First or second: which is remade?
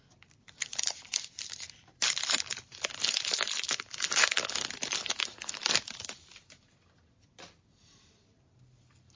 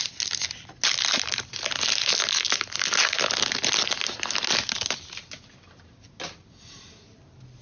first